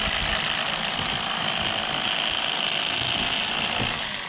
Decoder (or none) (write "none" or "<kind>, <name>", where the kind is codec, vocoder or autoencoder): none